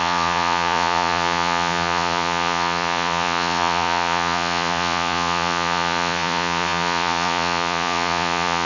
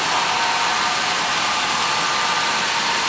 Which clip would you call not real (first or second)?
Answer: first